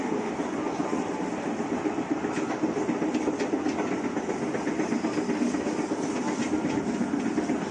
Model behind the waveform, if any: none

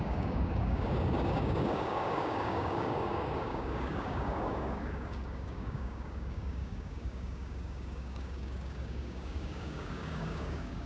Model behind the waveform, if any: codec, DAC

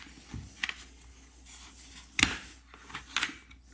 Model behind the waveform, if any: none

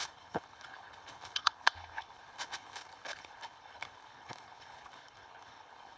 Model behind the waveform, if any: codec, HILCodec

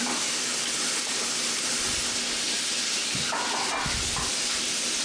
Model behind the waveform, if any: none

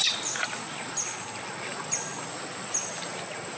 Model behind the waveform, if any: none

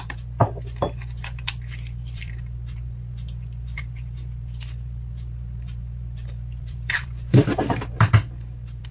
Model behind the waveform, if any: vocoder, BigVGAN v2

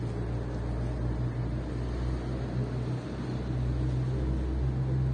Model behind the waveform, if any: none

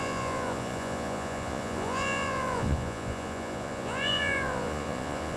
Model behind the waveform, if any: vocoder, Vocos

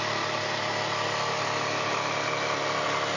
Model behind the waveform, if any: none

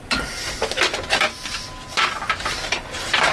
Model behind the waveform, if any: none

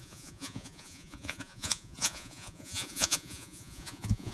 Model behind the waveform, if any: vocoder, Vocos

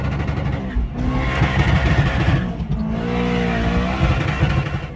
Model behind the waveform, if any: none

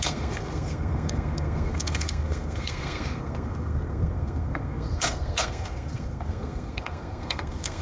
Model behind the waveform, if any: codec, SNAC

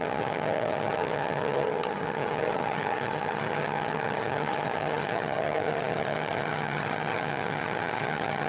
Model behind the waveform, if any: vocoder, HiFi-GAN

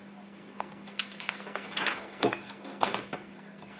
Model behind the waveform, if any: codec, SNAC